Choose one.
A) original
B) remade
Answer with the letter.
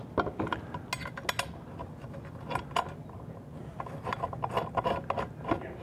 A